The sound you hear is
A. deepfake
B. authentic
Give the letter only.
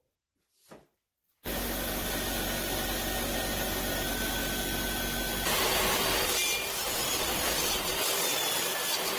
B